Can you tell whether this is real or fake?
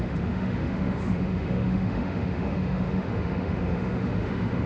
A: fake